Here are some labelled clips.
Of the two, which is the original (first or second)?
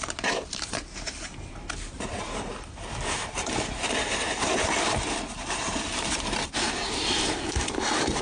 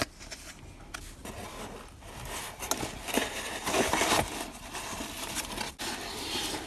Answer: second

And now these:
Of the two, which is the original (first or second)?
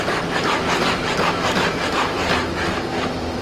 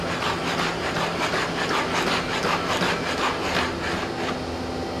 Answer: second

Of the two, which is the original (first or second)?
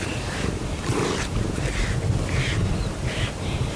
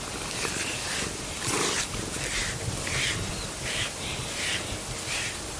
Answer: second